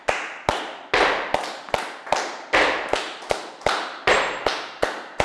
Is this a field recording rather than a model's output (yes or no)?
yes